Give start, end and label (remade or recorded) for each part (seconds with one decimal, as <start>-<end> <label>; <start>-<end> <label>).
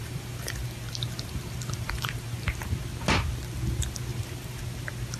0.0-2.9 remade; 2.9-4.1 recorded; 4.1-4.6 remade; 4.6-5.2 recorded